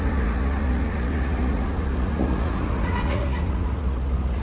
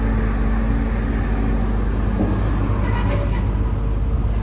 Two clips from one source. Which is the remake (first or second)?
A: first